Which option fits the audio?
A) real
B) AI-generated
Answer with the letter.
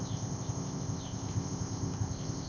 B